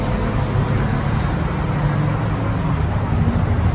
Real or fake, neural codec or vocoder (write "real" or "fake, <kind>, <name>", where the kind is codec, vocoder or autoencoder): real